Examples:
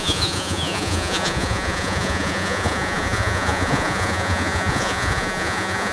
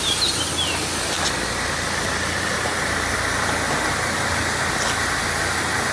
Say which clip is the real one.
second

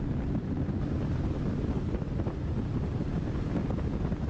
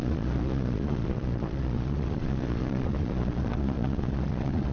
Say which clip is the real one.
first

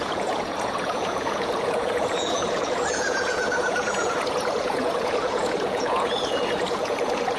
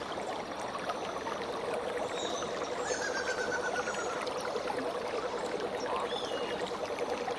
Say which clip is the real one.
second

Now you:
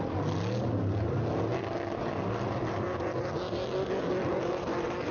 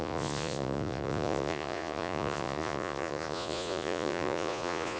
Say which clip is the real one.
first